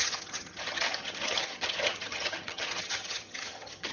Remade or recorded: remade